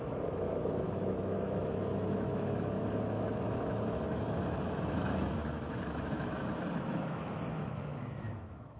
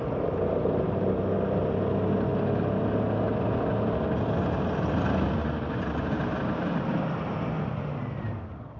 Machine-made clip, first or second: first